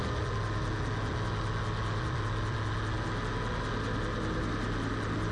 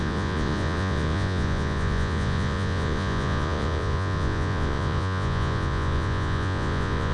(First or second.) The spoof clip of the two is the second